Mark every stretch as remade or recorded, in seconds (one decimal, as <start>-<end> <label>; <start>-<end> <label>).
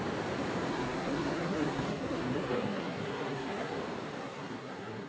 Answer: 0.0-0.7 recorded; 0.7-3.8 remade; 3.8-4.2 recorded; 4.2-5.1 remade